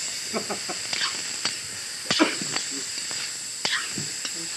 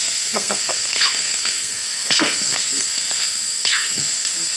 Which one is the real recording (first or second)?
first